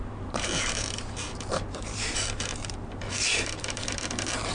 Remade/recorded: remade